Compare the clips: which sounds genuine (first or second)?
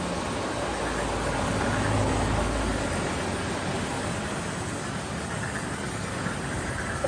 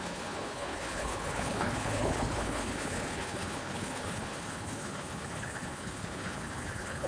first